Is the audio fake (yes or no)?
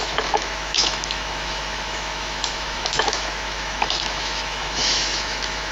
yes